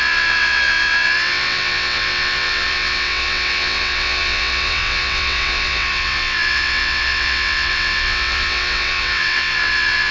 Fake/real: fake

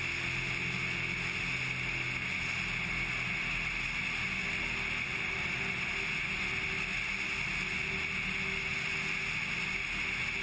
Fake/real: real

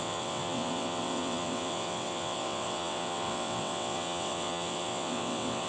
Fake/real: fake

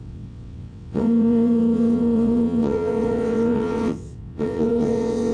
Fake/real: fake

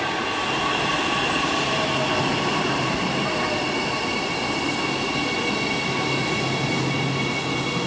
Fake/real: real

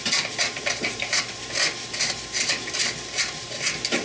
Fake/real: real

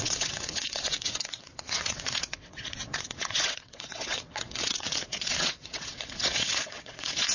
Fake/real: fake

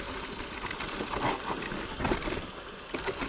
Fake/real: real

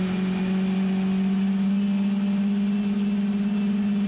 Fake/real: real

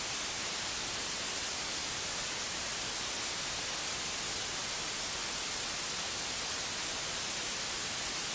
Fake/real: real